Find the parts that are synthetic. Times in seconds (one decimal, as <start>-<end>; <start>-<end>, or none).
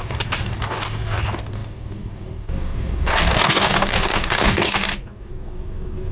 0.0-6.1